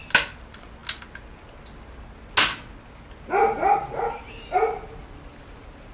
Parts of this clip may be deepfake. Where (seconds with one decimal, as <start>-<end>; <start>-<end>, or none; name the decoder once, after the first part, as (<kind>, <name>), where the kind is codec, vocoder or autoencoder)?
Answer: none